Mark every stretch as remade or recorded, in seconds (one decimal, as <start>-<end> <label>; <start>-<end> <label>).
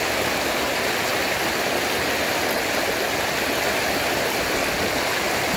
0.0-5.6 recorded